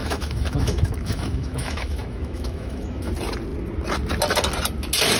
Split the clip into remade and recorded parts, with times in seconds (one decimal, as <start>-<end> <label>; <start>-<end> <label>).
0.0-3.1 remade; 3.1-5.2 recorded